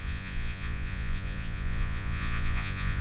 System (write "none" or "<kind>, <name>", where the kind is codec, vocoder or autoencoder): vocoder, Vocos